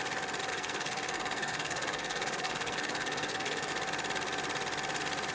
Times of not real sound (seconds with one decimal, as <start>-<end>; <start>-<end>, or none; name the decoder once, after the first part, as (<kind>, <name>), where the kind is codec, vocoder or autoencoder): 0.5-3.7 (codec, SNAC)